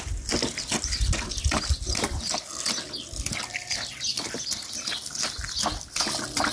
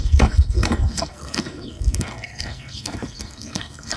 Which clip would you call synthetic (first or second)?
second